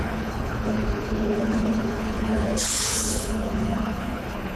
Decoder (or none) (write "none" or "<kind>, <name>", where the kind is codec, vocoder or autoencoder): codec, HILCodec